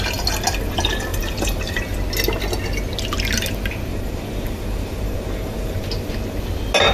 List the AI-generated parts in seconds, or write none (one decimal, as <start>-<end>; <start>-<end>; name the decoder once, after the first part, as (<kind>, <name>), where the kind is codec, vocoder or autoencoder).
1.1-1.8 (vocoder, BigVGAN v2); 3.9-5.9